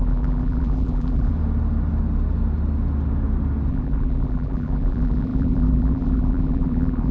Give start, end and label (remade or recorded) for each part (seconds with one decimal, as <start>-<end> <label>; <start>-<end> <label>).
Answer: 0.0-1.3 remade; 1.3-3.7 recorded; 3.7-7.1 remade